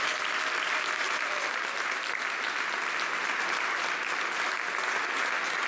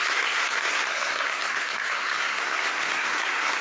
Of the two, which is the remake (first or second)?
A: second